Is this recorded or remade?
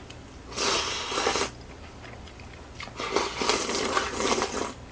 recorded